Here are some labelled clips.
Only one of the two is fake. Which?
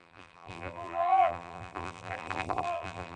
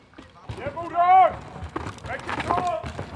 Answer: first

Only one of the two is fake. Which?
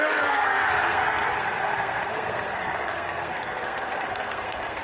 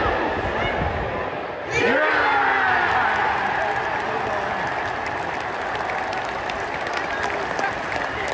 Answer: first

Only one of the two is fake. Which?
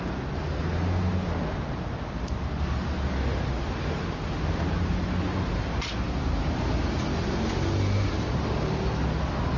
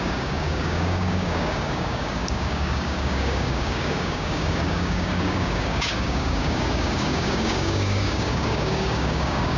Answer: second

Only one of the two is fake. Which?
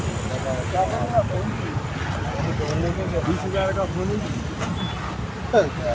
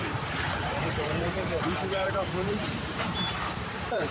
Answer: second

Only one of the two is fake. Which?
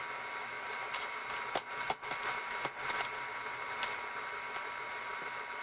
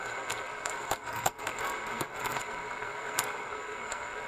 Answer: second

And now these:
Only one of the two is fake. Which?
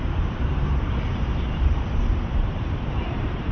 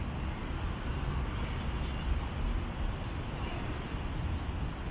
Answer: first